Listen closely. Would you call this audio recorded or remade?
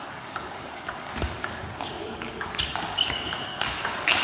remade